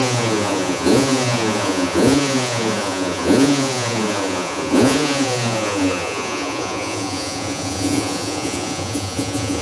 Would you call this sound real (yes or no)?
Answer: no